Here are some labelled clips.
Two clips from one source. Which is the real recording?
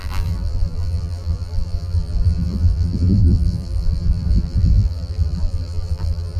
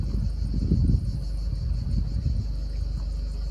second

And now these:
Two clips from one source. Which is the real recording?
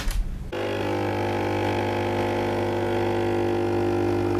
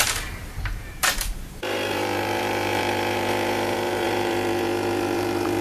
first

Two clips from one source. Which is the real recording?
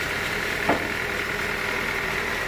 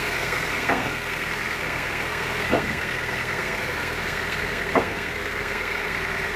first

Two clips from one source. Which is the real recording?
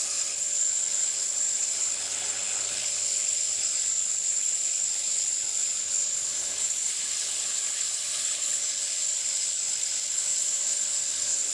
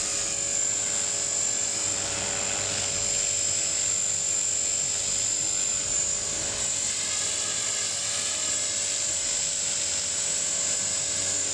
second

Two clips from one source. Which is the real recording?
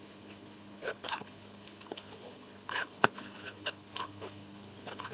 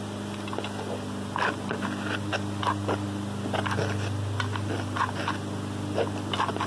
second